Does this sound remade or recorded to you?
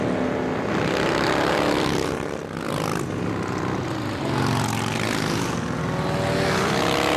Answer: recorded